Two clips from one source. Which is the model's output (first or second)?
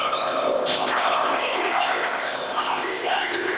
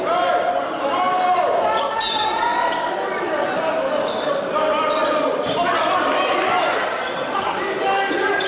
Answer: first